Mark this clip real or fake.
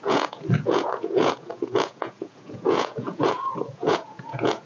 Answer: fake